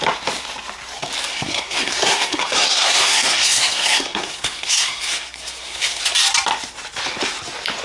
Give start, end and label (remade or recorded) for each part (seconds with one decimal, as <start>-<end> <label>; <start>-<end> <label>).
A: 0.0-1.3 recorded; 1.3-6.0 remade; 6.0-7.8 recorded